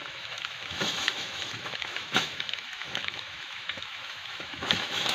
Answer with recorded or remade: remade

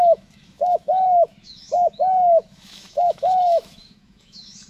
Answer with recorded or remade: remade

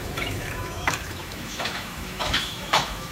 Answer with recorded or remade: remade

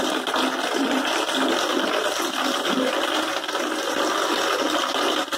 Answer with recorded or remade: recorded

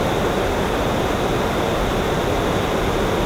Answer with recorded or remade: recorded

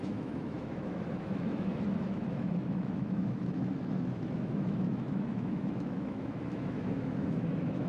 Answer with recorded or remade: remade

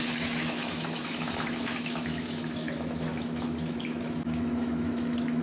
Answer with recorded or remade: remade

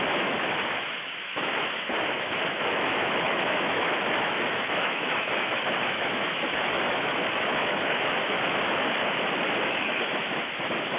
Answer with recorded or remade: remade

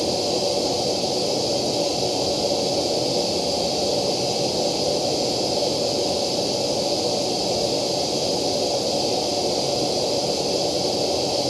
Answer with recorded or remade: recorded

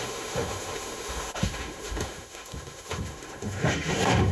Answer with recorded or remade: remade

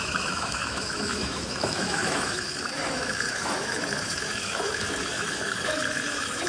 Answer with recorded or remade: remade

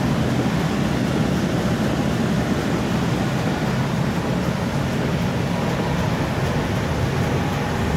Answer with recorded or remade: recorded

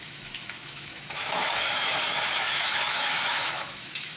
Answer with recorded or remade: remade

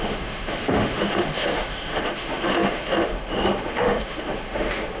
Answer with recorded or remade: remade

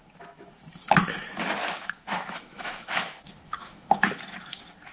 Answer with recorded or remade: remade